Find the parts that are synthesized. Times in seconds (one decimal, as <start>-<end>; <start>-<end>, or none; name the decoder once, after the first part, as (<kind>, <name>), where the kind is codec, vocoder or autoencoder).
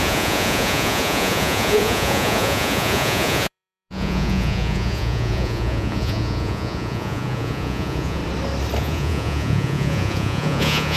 0.0-8.2 (vocoder, Vocos); 8.8-11.0